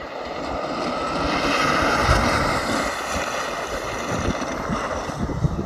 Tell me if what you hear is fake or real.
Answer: real